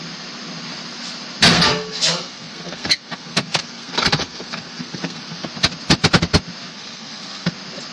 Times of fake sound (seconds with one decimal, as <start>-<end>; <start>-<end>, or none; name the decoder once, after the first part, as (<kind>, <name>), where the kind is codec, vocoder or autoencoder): 1.5-5.5 (codec, SNAC); 6.7-7.5